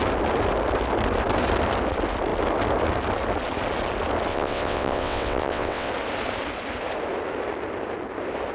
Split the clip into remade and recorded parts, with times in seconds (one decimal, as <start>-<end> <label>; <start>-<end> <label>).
0.0-4.3 recorded; 4.3-5.9 remade; 5.9-8.5 recorded